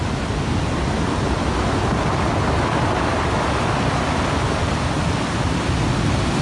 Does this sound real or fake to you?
real